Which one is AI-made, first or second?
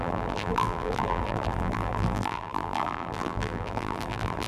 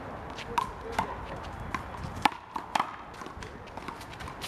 first